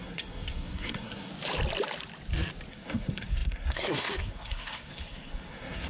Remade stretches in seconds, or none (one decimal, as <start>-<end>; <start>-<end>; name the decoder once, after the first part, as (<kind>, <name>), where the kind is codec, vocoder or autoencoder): 0.0-1.3 (codec, SNAC); 2.7-5.9